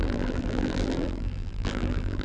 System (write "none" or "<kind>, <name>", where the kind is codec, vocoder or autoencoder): vocoder, BigVGAN v2